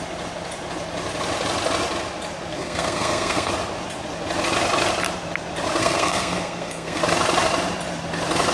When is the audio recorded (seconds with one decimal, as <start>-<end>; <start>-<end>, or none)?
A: 0.0-2.5; 3.5-5.8; 7.0-8.5